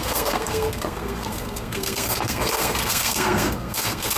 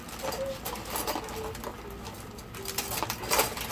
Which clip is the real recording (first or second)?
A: second